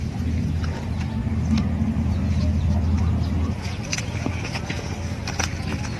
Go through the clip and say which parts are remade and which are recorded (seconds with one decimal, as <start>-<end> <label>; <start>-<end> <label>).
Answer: 0.0-3.6 recorded; 3.6-4.9 remade; 4.9-6.0 recorded